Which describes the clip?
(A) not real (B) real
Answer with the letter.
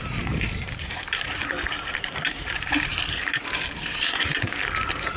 A